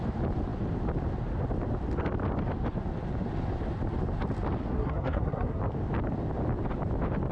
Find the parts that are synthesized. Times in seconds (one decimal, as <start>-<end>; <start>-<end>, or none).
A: 4.6-5.6